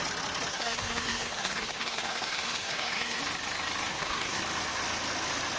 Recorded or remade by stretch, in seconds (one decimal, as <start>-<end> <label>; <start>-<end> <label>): 0.0-0.5 recorded; 0.5-3.2 remade; 3.2-3.9 recorded; 3.9-4.4 remade; 4.4-5.6 recorded